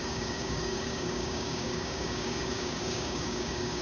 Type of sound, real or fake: fake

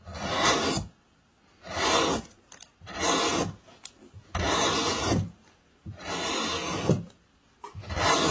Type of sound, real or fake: real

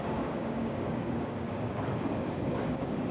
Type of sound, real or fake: fake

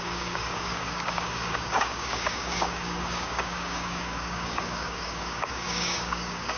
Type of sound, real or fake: fake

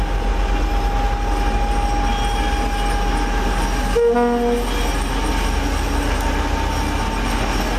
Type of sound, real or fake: real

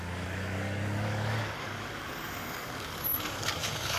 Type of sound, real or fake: fake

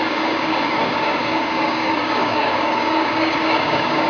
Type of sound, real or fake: fake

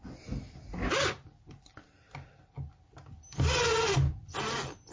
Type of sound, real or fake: real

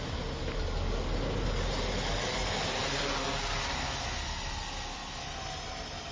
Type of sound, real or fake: real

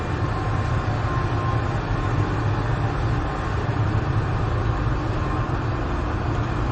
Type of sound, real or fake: real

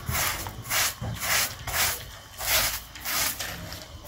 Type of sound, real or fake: real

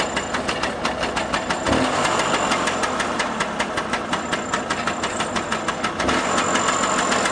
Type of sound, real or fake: real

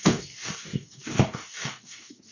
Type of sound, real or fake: fake